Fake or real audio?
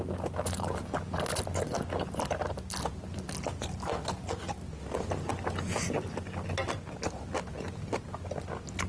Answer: real